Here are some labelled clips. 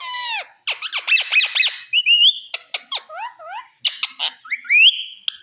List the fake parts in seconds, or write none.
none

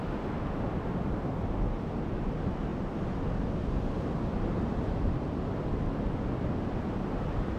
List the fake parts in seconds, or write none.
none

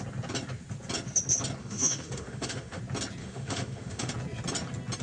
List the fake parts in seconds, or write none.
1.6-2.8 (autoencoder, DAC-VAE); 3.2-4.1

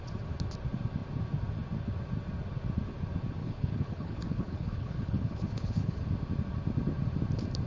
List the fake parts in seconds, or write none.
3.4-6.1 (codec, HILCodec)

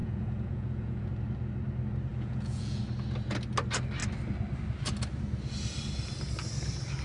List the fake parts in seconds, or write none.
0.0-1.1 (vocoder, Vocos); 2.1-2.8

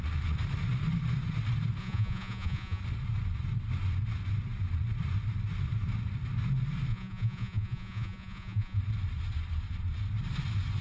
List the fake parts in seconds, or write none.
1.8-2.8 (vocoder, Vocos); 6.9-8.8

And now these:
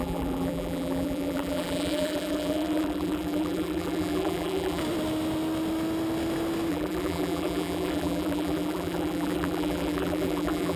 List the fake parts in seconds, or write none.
0.0-4.8 (vocoder, BigVGAN v2); 6.7-10.8

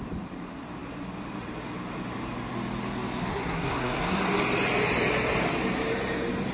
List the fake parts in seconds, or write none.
3.3-4.2 (codec, SNAC)